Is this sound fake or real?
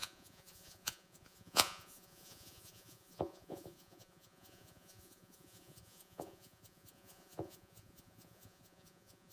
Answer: fake